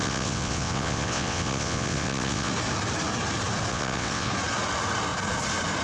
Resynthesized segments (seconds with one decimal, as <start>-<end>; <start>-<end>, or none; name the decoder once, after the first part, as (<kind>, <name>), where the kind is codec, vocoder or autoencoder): 0.0-2.5 (vocoder, WaveNeXt); 3.7-4.3